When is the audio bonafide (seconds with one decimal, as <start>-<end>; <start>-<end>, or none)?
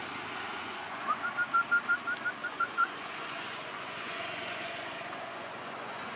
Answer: 0.0-0.5; 1.3-2.4